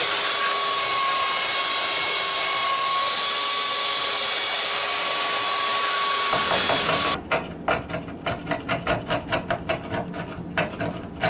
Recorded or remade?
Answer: recorded